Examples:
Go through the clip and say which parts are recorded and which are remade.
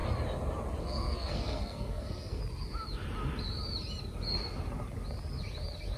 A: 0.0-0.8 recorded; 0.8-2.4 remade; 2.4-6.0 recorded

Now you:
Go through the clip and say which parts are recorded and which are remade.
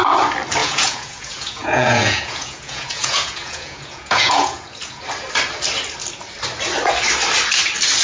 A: 0.0-0.6 recorded; 0.6-5.0 remade; 5.0-8.0 recorded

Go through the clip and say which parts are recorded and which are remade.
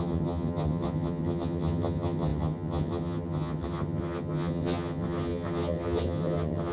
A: 0.0-6.7 remade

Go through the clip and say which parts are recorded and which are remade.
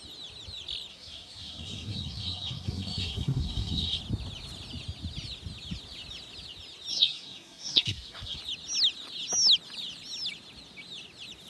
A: 0.0-0.9 recorded; 0.9-4.0 remade; 4.0-6.9 recorded; 6.9-8.4 remade; 8.4-11.5 recorded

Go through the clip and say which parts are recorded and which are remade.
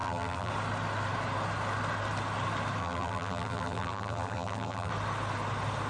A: 0.0-0.5 remade; 0.5-2.8 recorded; 2.8-4.9 remade; 4.9-5.9 recorded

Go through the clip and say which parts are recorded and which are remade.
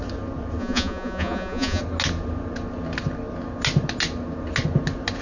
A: 0.0-0.6 recorded; 0.6-1.8 remade; 1.8-5.2 recorded